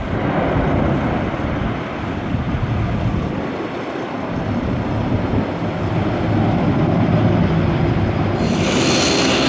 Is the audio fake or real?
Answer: real